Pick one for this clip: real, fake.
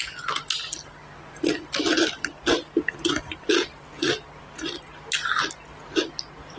real